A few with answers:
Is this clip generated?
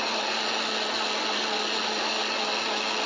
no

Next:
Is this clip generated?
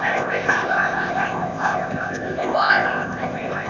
yes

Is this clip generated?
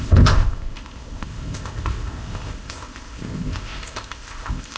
yes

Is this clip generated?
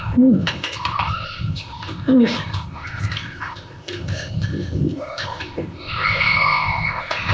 yes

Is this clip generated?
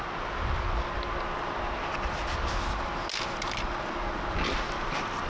no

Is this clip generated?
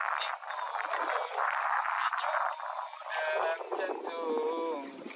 no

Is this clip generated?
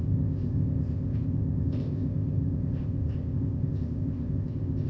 yes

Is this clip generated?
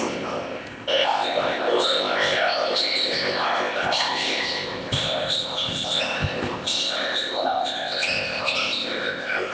yes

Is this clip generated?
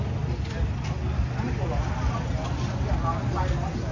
no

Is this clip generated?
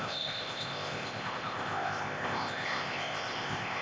yes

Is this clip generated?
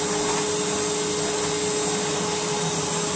no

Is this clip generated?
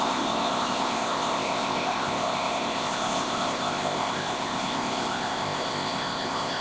yes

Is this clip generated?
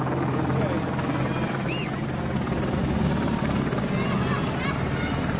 no